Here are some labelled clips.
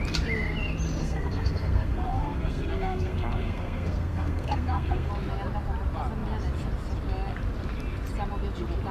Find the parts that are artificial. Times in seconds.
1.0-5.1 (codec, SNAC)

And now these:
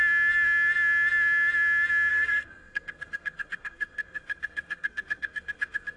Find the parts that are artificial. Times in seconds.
2.1-6.0 (codec, SNAC)

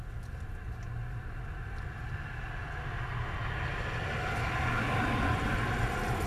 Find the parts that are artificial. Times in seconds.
none

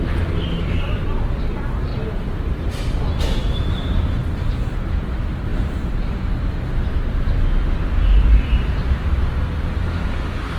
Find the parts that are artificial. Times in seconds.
1.9-4.8 (vocoder, BigVGAN v2)

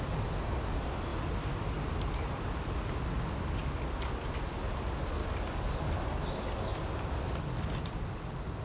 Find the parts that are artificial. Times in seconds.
5.2-5.8 (codec, DAC)

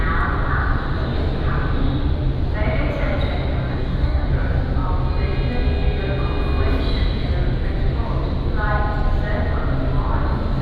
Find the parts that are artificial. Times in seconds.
3.7-4.3 (codec, DAC)

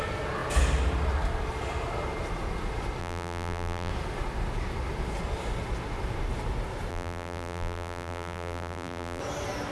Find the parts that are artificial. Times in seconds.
3.0-3.9 (vocoder, BigVGAN v2); 6.9-9.2

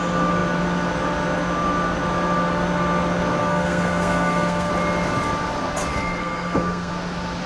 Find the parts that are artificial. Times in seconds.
3.4-4.7 (codec, SNAC); 5.9-6.9